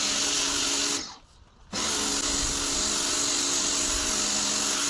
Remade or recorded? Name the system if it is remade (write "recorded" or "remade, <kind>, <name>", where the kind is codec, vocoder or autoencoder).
recorded